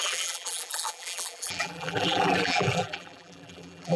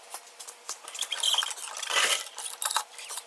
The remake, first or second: first